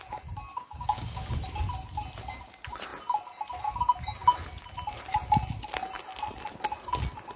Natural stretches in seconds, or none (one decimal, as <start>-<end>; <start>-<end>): 0.0-0.5; 1.4-7.4